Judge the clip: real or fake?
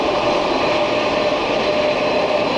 real